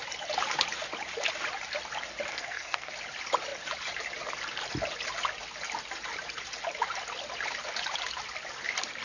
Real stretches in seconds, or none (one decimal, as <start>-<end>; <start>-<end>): 0.0-2.3; 2.9-9.0